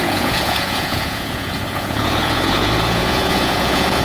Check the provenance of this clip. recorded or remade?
remade